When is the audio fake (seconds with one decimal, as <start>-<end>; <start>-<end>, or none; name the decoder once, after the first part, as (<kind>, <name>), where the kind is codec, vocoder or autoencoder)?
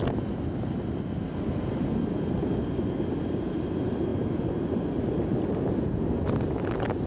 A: none